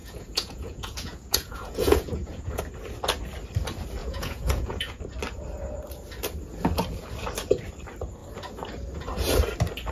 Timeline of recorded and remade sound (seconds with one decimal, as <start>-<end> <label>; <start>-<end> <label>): 0.0-2.6 remade; 2.6-4.0 recorded; 4.0-5.0 remade; 5.0-9.9 recorded

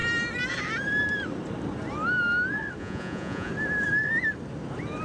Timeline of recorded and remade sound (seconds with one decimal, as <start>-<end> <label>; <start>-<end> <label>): 0.0-2.8 recorded; 2.8-3.5 remade; 3.5-5.0 recorded

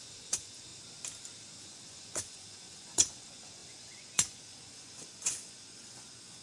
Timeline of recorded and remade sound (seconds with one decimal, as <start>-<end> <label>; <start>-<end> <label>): 0.0-0.7 remade; 0.7-1.5 recorded; 1.5-6.4 remade

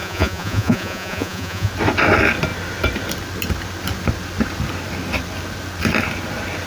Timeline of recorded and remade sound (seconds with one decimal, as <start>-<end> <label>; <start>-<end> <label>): 0.0-1.7 remade; 1.7-6.7 recorded